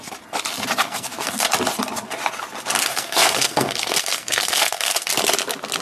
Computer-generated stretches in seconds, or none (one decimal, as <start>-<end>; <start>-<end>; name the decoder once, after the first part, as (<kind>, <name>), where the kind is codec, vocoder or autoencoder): 0.8-1.5 (codec, SNAC); 2.9-5.1